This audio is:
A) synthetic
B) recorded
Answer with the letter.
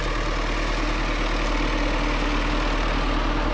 B